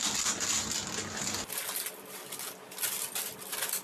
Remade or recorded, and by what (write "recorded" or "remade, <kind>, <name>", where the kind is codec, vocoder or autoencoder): recorded